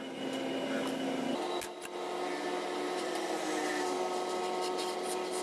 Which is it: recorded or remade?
recorded